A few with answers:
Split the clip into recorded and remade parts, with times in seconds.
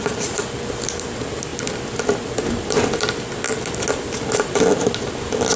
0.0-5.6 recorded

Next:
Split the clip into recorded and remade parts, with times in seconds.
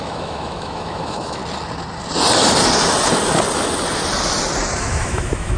0.0-1.4 remade; 1.4-4.8 recorded; 4.8-5.6 remade